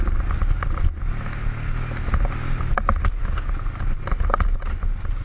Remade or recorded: recorded